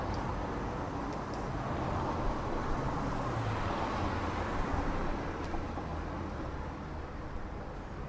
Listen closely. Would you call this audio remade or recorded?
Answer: recorded